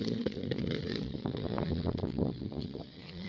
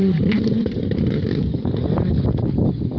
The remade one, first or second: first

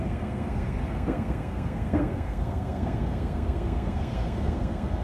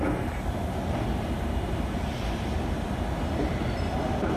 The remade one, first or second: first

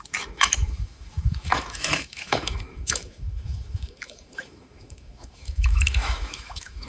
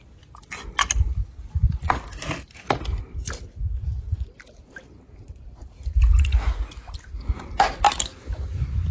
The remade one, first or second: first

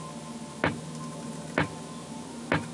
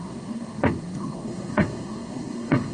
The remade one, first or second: second